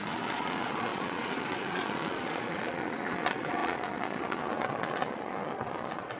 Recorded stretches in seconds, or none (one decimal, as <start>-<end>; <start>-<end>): none